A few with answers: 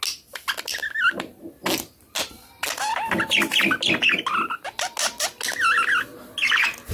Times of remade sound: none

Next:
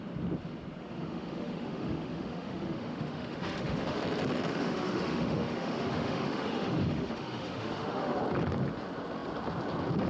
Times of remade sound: 0.8-4.0 (autoencoder, DAC-VAE); 4.5-8.2

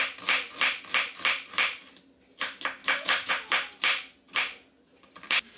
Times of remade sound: 2.8-3.3 (autoencoder, DAC-VAE)

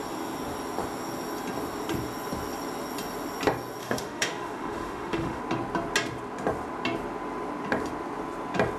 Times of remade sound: 3.8-5.4 (autoencoder, DAC-VAE)

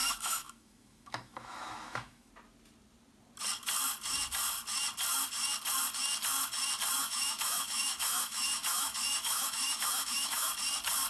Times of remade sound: 0.0-2.3 (autoencoder, DAC-VAE); 7.0-10.5